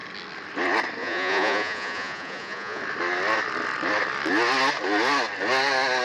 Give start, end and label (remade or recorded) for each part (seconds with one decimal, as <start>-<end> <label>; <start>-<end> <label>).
0.0-1.0 recorded; 1.0-2.8 remade; 2.8-6.0 recorded